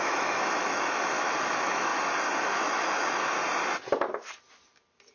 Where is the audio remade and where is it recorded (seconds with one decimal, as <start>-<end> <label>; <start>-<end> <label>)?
0.0-1.9 remade; 1.9-2.4 recorded; 2.4-3.4 remade; 3.4-5.1 recorded